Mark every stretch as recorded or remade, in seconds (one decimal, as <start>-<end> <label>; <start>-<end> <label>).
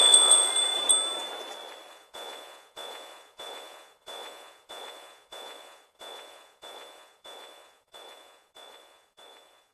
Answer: 0.0-0.5 remade; 0.5-1.9 recorded; 1.9-9.7 remade